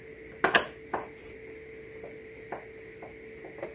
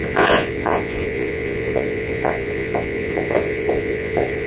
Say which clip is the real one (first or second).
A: first